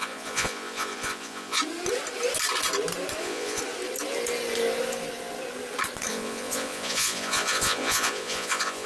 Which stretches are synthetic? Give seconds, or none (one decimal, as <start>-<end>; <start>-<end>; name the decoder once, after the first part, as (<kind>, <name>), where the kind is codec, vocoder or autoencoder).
0.0-1.6 (vocoder, Vocos); 3.2-3.6; 6.1-8.9